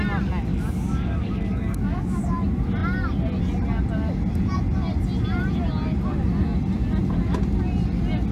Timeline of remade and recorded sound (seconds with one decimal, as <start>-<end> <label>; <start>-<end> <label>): 0.0-0.5 recorded; 0.5-2.2 remade; 2.2-8.3 recorded